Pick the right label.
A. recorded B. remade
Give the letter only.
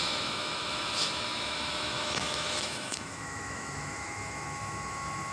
B